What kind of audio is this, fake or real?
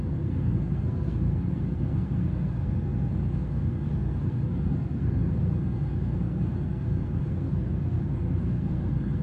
fake